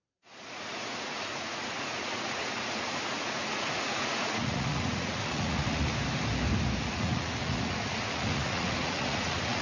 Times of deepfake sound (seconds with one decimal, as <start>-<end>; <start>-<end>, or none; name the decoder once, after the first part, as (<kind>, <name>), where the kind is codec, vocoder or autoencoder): 0.0-5.9 (vocoder, Vocos); 6.9-9.6